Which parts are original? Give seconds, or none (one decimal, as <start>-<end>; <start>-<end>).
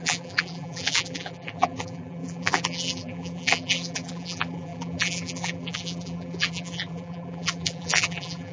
none